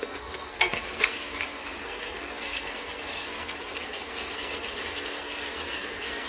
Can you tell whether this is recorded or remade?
remade